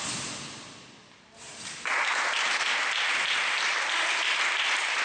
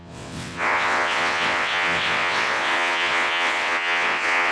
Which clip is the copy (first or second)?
second